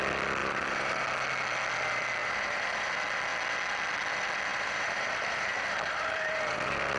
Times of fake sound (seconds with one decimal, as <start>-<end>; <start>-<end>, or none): 0.4-1.0; 2.2-2.9; 4.5-7.0